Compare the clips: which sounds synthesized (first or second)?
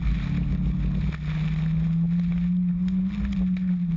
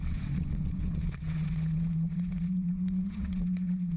second